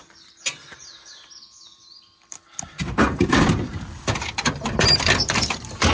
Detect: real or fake fake